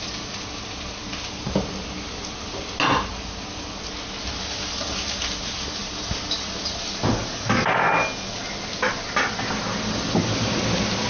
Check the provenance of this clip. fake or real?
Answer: real